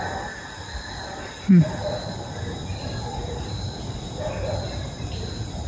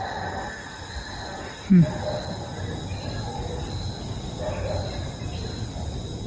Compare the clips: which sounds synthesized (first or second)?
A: first